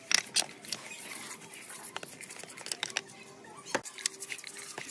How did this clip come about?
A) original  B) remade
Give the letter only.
A